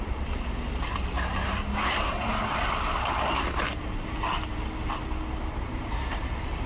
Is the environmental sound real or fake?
real